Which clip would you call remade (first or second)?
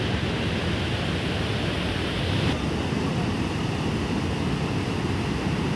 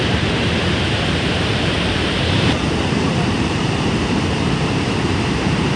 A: second